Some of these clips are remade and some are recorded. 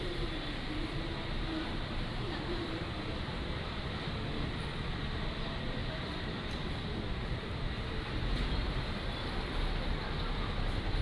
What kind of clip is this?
remade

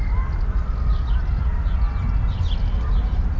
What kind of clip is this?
recorded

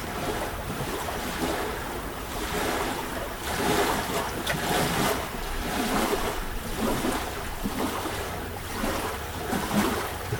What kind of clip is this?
remade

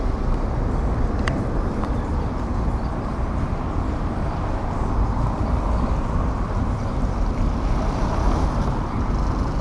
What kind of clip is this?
recorded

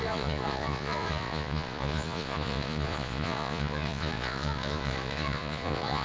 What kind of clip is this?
remade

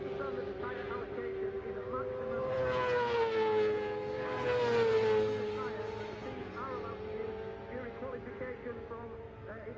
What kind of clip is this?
recorded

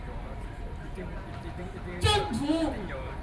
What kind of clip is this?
remade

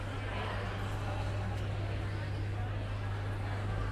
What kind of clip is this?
recorded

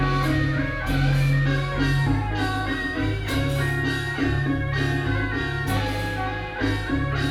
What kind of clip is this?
recorded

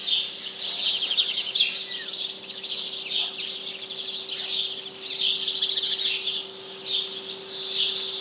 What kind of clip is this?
recorded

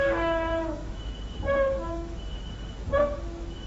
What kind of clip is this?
remade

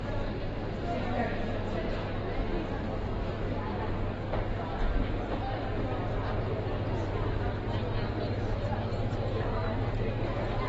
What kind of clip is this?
recorded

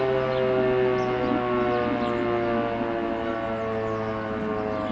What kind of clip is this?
recorded